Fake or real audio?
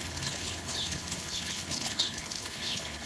fake